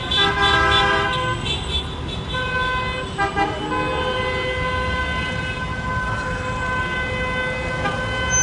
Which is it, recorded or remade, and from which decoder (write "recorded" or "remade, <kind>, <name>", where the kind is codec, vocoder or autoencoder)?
recorded